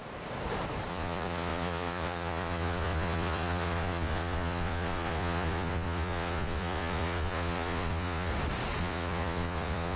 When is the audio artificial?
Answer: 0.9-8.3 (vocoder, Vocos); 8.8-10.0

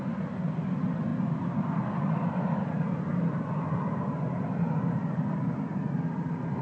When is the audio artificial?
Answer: none